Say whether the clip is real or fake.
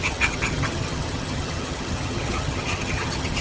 fake